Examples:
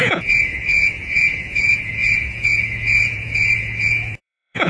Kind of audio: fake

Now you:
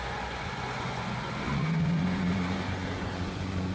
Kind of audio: fake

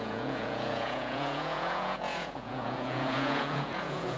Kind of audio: fake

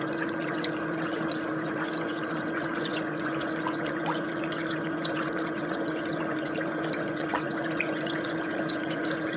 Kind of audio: fake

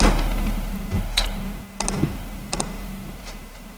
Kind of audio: real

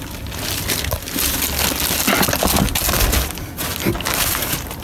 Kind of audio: real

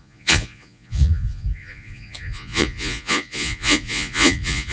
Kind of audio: fake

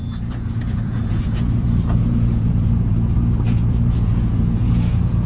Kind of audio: fake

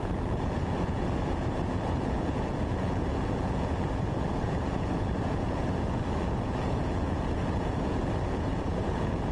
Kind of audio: fake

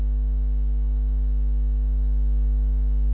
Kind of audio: real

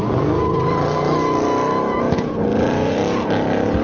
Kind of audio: real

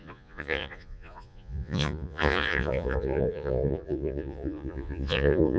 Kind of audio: fake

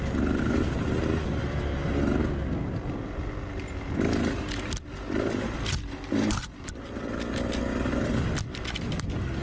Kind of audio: real